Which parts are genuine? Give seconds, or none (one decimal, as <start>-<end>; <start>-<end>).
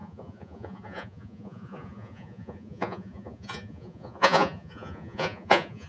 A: none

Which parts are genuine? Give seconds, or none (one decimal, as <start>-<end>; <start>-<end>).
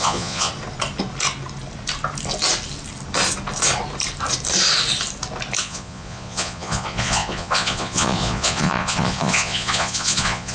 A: 0.5-5.6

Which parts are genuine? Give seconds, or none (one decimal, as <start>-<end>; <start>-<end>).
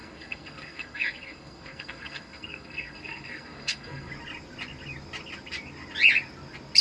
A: 4.1-6.8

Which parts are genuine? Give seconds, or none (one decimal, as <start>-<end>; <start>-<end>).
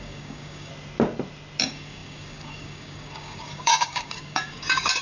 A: 0.7-1.6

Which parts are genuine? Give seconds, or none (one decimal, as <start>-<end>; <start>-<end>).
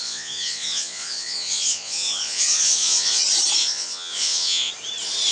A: 3.2-3.6; 4.7-5.3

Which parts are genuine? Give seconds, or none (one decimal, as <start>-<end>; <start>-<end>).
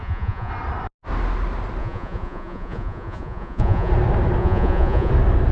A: 0.5-1.8; 3.9-4.4; 5.1-5.5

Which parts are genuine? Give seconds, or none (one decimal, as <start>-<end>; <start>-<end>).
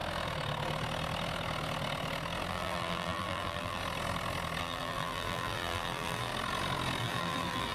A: 0.0-2.5; 3.8-4.6; 6.3-7.0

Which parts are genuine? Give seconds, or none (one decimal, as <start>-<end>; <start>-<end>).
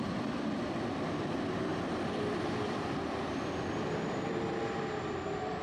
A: none